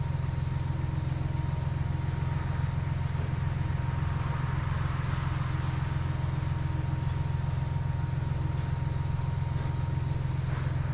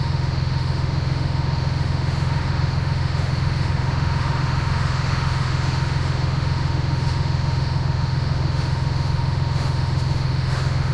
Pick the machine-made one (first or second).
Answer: second